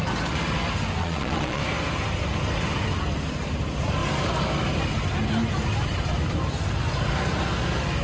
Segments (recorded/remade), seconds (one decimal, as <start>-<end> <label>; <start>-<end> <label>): 0.0-1.0 recorded; 1.0-1.6 remade; 1.6-8.0 recorded